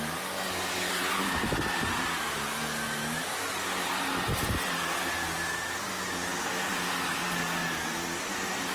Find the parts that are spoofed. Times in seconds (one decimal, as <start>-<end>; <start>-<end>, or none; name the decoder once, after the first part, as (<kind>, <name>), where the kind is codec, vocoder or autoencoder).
none